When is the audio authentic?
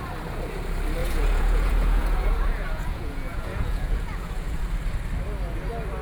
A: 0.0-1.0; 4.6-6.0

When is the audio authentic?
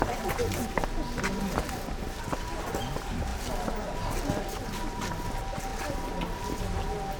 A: 0.0-7.2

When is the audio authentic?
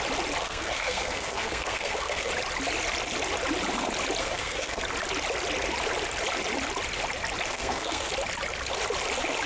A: 0.0-0.4; 2.3-4.2; 4.8-7.5; 8.1-9.5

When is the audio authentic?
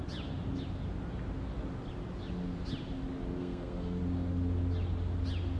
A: 0.0-3.4; 4.0-5.6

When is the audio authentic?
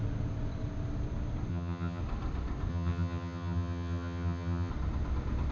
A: 0.0-1.5; 2.0-2.7; 4.7-5.5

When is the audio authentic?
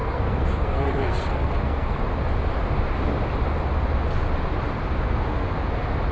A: 2.0-6.1